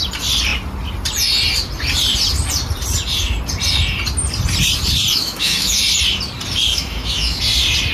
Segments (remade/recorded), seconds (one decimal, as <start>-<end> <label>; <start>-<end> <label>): 0.0-5.1 recorded; 5.1-5.8 remade; 5.8-6.7 recorded; 6.7-7.4 remade; 7.4-7.9 recorded